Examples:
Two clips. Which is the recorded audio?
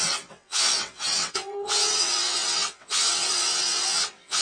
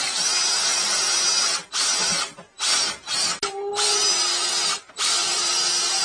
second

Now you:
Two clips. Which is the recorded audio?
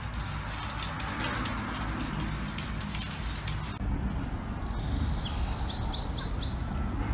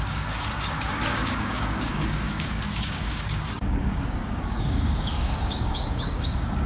first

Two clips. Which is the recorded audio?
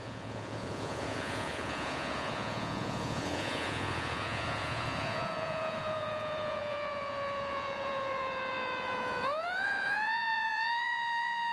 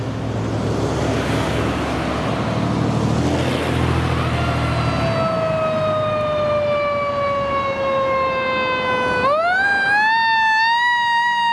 second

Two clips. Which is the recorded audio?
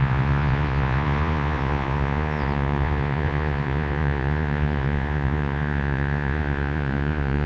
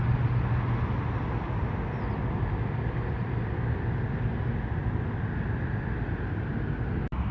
second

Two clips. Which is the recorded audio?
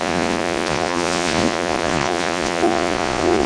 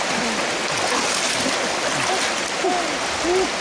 second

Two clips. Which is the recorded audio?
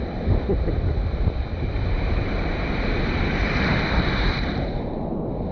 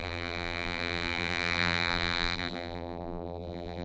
first